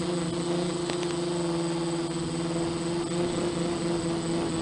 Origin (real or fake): real